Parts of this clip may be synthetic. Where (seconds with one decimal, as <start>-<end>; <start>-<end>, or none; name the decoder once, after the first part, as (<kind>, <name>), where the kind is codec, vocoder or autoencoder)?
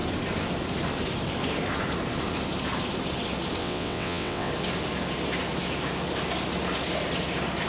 3.6-4.5 (vocoder, WaveNeXt)